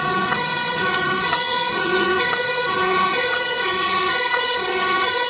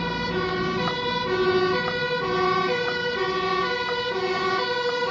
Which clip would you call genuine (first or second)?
second